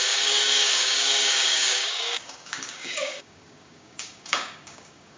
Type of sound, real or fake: fake